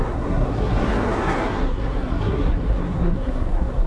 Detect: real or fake fake